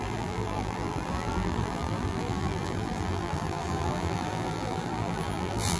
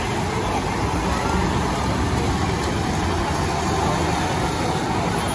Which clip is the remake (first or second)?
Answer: first